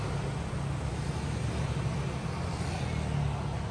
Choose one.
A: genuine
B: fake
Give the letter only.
A